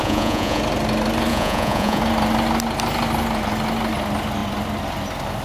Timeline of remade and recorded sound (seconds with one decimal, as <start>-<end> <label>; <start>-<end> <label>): 0.0-0.6 remade; 0.6-1.3 recorded; 1.3-2.0 remade; 2.0-5.4 recorded